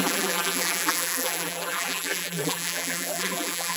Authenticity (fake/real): fake